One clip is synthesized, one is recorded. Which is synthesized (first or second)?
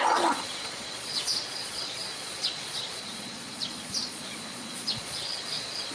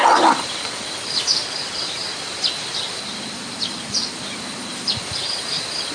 first